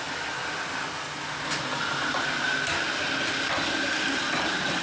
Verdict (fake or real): real